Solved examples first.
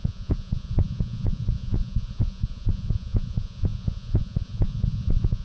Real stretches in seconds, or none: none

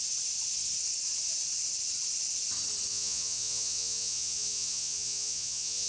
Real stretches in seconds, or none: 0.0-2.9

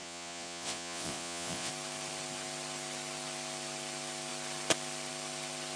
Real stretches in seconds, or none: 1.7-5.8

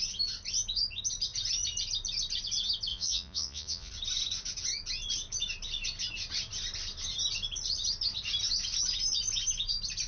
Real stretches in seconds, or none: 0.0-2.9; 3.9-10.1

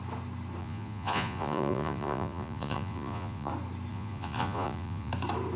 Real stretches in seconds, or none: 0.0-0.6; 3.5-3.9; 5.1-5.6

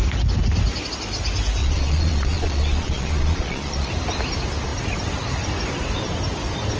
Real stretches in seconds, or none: 0.0-1.6; 3.9-6.8

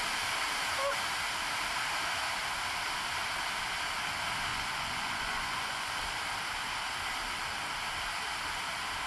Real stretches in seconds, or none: 0.0-4.5; 5.9-9.1